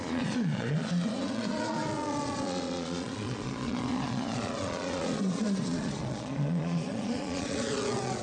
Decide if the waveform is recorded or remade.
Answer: remade